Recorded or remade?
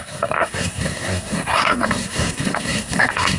remade